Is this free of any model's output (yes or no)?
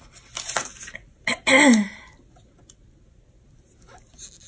yes